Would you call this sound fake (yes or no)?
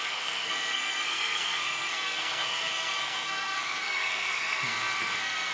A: yes